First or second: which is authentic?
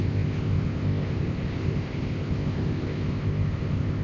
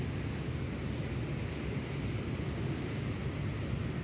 second